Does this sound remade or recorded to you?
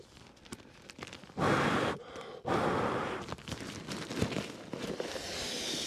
recorded